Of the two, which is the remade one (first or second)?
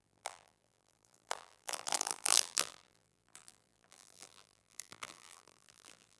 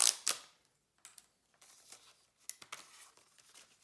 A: first